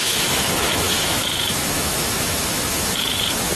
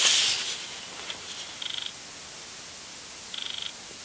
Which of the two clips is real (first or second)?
second